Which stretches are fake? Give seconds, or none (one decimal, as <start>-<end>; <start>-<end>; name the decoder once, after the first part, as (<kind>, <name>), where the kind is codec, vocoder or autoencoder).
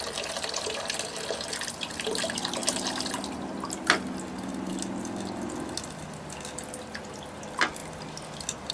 none